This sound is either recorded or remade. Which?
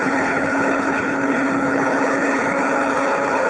remade